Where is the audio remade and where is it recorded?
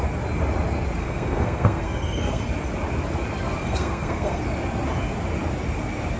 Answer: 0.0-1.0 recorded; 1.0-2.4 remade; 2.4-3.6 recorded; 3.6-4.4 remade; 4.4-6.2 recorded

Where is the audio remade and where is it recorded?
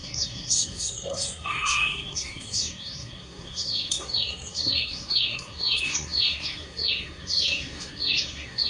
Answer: 0.0-8.7 remade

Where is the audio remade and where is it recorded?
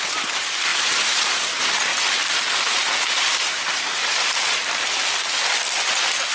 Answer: 0.0-1.9 remade; 1.9-2.6 recorded; 2.6-4.6 remade; 4.6-6.3 recorded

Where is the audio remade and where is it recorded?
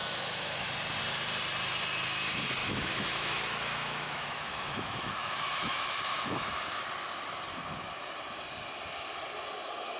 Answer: 0.0-0.7 remade; 0.7-2.6 recorded; 2.6-6.8 remade; 6.8-10.0 recorded